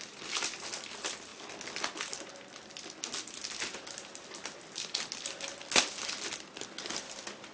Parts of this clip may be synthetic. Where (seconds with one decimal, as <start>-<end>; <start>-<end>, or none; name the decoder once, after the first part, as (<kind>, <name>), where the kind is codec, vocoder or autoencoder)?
none